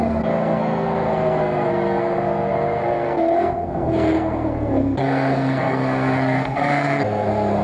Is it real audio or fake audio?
fake